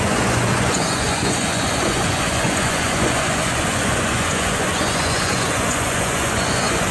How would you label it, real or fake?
fake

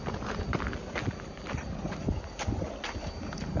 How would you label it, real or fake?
real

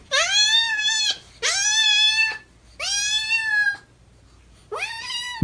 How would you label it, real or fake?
real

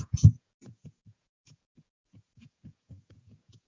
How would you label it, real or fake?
fake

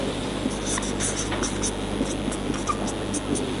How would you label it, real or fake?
real